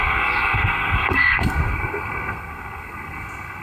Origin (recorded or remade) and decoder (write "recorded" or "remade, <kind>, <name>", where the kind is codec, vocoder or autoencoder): remade, codec, SNAC